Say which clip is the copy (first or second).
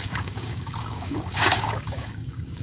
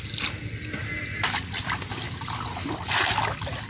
first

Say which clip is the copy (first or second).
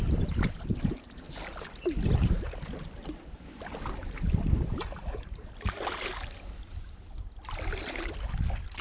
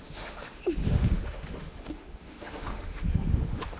second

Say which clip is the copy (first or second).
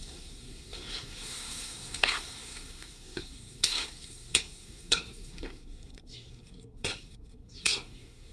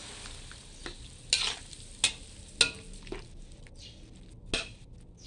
first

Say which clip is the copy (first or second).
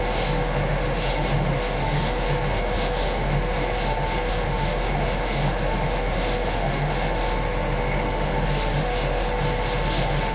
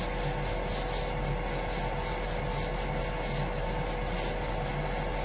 first